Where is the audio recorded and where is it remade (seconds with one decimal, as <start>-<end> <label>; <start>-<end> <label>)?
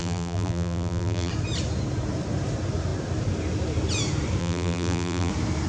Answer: 0.0-1.3 remade; 1.3-4.4 recorded; 4.4-5.3 remade; 5.3-5.7 recorded